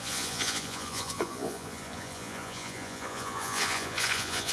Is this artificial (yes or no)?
yes